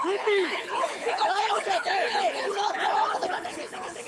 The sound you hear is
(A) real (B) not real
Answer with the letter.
B